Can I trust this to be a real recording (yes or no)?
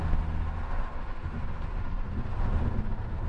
yes